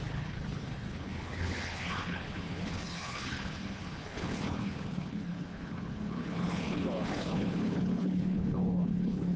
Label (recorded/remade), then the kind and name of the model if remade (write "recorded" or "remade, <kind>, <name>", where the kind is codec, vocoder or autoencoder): remade, codec, HILCodec